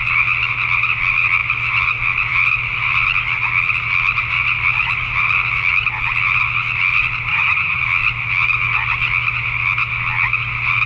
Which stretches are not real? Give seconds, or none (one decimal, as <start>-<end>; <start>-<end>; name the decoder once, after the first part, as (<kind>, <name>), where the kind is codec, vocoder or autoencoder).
7.3-7.8 (vocoder, HiFi-GAN)